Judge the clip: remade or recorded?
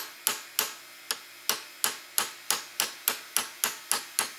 recorded